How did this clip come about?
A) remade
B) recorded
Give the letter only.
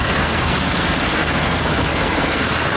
A